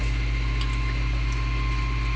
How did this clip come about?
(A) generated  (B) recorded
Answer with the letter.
B